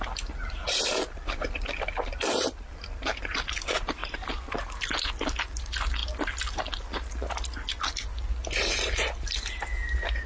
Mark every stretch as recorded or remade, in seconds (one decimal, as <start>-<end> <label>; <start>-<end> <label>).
0.0-10.3 recorded